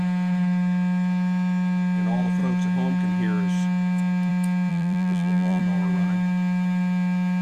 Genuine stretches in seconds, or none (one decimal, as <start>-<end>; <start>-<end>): 0.0-4.7; 5.6-7.4